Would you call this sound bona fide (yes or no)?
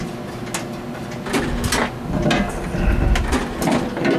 yes